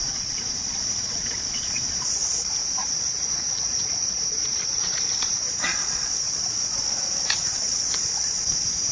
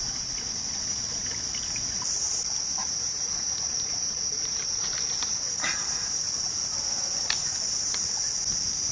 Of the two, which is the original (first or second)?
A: second